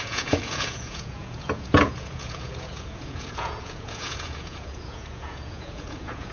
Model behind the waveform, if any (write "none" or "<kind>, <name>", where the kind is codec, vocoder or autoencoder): vocoder, Vocos